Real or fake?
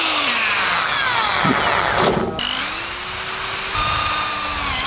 real